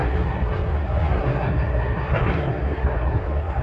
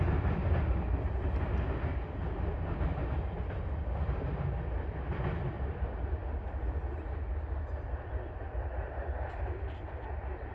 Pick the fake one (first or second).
first